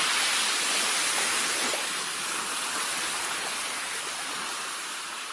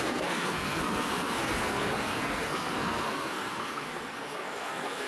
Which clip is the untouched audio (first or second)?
first